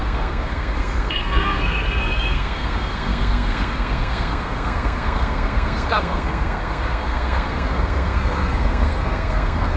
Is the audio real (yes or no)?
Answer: no